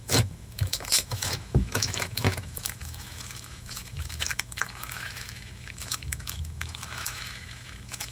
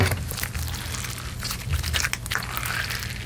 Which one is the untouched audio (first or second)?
second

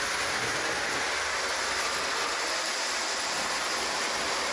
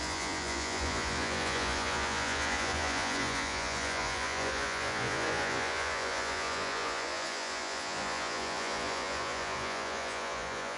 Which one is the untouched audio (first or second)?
first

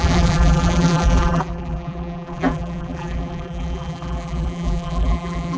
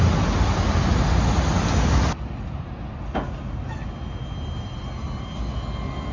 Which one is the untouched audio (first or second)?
second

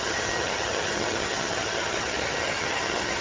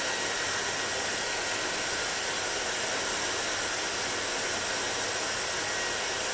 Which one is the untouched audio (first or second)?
second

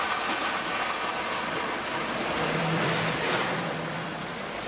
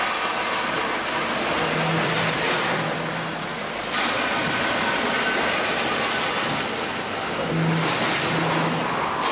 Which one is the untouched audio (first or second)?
second